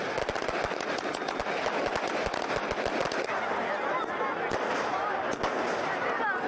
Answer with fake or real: real